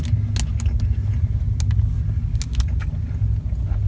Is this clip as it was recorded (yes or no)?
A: yes